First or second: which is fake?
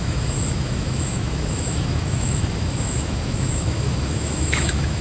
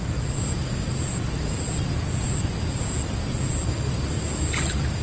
first